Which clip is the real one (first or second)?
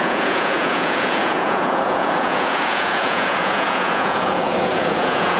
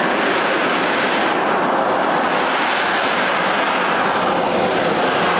second